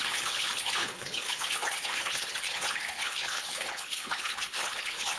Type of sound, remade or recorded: remade